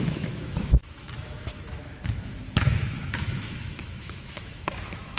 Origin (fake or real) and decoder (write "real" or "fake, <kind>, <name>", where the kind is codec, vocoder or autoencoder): fake, autoencoder, DAC-VAE